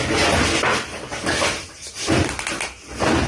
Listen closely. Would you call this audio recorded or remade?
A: recorded